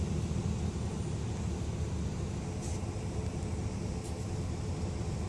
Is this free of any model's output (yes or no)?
yes